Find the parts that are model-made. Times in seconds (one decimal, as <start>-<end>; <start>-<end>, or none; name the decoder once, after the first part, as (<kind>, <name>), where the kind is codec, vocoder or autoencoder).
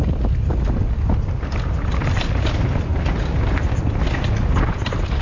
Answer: none